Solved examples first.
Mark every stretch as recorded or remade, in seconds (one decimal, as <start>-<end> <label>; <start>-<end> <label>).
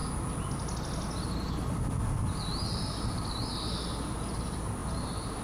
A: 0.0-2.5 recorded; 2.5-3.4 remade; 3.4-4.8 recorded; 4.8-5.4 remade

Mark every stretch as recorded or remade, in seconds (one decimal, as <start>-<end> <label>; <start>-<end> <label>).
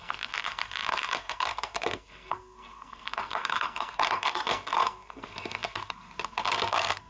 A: 0.0-7.1 remade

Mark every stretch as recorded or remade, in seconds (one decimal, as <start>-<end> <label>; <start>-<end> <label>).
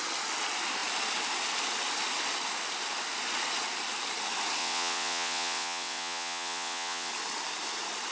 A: 0.0-4.6 recorded; 4.6-7.1 remade; 7.1-8.1 recorded